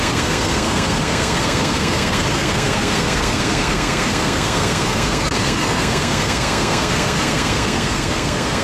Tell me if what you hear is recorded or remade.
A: remade